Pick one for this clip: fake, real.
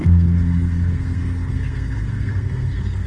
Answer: fake